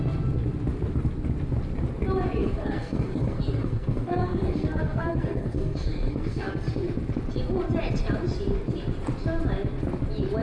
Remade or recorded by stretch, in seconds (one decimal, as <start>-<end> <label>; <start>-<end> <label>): 0.0-2.4 recorded; 2.4-6.5 remade; 6.5-10.4 recorded